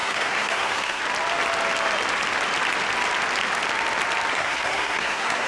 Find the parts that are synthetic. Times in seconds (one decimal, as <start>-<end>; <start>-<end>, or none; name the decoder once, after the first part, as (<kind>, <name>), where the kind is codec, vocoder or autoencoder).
0.0-1.0 (codec, SNAC); 4.3-5.5